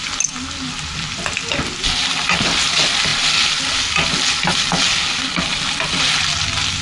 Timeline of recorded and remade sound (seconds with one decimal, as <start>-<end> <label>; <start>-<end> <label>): 0.0-6.8 recorded